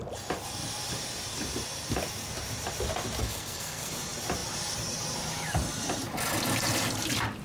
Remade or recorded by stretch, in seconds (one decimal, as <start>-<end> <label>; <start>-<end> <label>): 0.0-3.2 recorded; 3.2-3.9 remade; 3.9-7.4 recorded